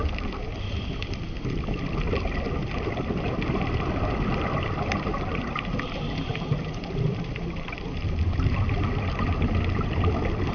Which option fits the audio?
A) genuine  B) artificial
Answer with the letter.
B